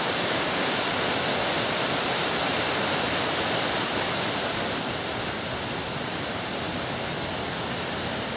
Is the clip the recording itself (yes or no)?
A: yes